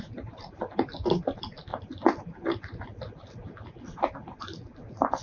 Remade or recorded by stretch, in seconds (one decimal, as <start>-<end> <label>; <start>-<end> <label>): 0.0-5.2 recorded